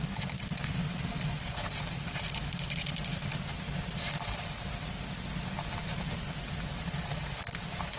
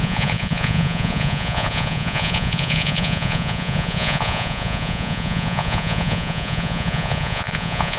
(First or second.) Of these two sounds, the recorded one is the first